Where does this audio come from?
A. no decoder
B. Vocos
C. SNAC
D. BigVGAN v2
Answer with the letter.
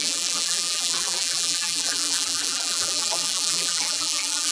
D